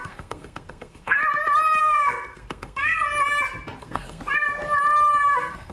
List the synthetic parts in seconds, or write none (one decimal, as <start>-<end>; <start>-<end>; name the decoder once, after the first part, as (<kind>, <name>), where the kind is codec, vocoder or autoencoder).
0.0-1.2 (codec, SNAC); 1.8-3.0; 3.8-4.2; 5.3-5.7